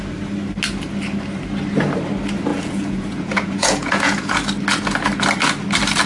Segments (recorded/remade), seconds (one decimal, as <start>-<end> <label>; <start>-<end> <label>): 0.0-2.5 recorded; 2.5-4.3 remade; 4.3-6.1 recorded